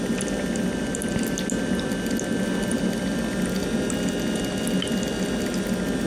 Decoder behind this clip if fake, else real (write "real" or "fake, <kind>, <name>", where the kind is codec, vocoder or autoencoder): real